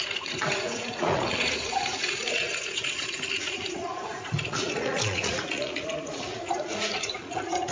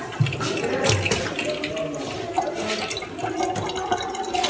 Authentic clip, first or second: second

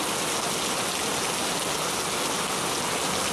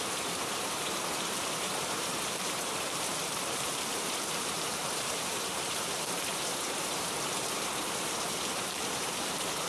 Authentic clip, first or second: first